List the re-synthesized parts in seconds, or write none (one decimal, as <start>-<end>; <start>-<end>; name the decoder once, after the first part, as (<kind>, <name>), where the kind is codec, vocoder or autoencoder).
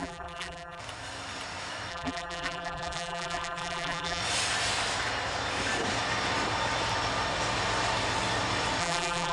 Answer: 0.0-0.8 (vocoder, BigVGAN v2); 1.9-4.2; 8.8-9.3